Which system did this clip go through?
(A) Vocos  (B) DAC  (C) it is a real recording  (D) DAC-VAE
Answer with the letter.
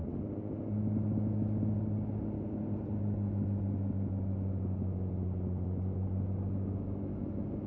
C